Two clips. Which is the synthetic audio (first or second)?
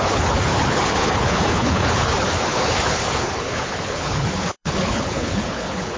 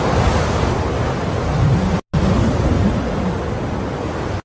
first